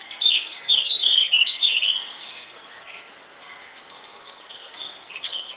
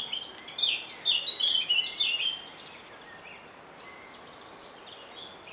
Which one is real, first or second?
second